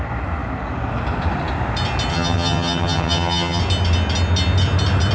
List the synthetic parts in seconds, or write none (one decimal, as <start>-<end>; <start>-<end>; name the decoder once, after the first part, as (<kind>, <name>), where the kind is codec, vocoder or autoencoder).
2.1-3.6 (vocoder, HiFi-GAN)